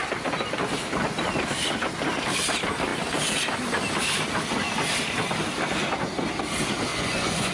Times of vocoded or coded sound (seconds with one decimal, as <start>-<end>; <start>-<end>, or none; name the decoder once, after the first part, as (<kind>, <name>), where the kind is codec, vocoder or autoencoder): 6.9-7.5 (vocoder, Vocos)